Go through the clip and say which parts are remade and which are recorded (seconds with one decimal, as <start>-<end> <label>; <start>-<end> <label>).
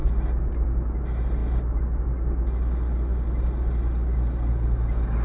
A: 0.0-5.2 recorded